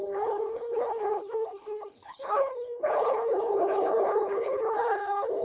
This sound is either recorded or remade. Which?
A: remade